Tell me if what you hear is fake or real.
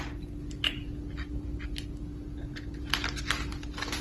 real